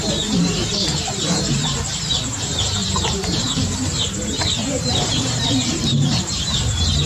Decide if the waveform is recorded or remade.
remade